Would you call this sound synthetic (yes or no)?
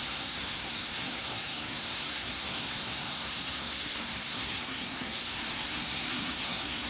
yes